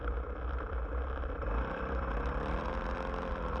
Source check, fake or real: fake